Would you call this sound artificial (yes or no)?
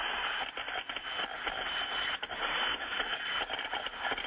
no